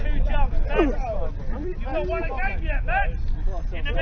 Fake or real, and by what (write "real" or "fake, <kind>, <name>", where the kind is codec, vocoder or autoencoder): real